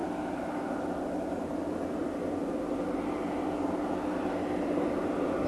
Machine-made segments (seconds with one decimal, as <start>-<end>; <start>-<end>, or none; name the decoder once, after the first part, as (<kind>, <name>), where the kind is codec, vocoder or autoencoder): none